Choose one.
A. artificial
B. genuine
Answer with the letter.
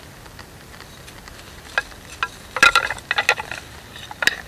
B